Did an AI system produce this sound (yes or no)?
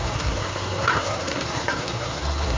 yes